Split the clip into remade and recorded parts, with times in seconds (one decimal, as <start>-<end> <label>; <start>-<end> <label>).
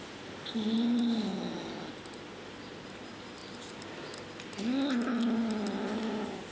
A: 0.0-6.5 recorded